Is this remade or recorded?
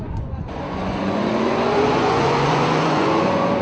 remade